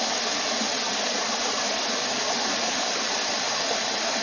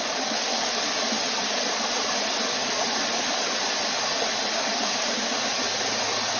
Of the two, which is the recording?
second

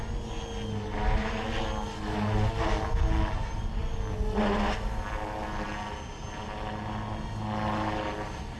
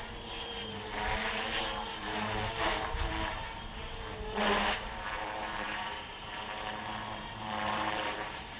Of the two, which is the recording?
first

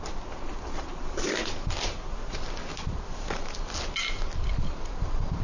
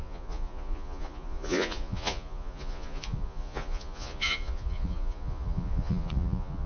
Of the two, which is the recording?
first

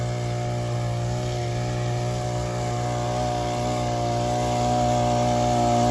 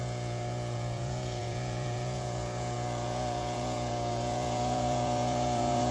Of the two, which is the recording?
first